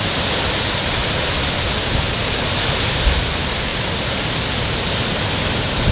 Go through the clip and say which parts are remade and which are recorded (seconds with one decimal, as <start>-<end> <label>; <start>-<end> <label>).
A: 0.0-1.0 recorded; 1.0-2.2 remade; 2.2-3.7 recorded; 3.7-4.3 remade; 4.3-5.9 recorded